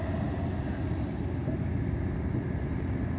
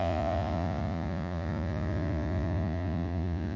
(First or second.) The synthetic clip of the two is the second